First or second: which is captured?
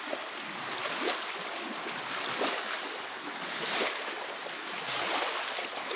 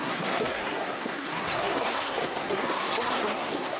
first